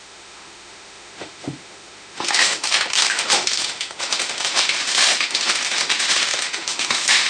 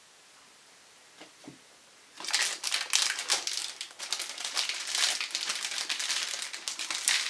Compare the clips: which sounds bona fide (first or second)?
second